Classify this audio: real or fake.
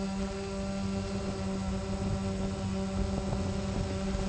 real